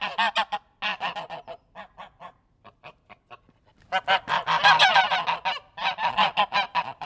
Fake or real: real